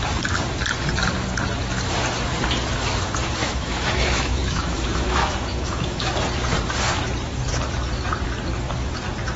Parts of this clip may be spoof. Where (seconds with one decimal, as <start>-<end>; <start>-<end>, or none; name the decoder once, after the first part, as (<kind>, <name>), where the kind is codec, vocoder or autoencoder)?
3.4-6.1 (autoencoder, DAC-VAE)